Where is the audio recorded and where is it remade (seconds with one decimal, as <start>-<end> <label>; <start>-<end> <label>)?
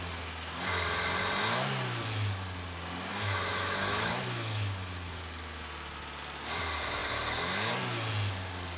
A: 0.0-3.1 recorded; 3.1-5.2 remade; 5.2-8.8 recorded